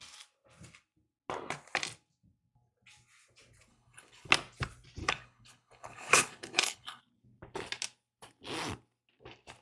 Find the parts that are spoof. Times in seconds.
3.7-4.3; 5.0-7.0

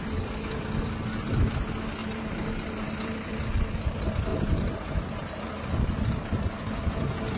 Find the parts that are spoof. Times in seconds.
2.0-3.3; 4.3-6.8

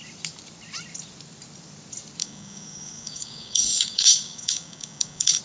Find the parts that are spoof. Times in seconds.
2.2-5.4

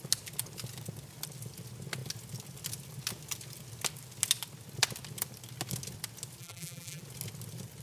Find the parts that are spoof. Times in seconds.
6.4-7.0

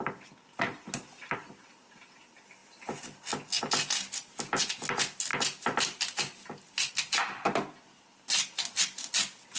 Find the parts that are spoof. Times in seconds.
none